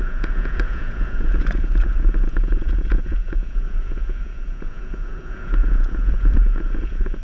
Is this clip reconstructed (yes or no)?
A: yes